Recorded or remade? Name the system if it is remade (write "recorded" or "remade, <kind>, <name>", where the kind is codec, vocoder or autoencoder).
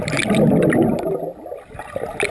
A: recorded